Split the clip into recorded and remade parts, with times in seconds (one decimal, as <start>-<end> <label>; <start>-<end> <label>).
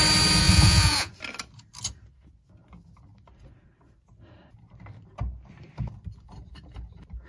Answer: 0.0-0.4 recorded; 0.4-1.1 remade; 1.1-7.3 recorded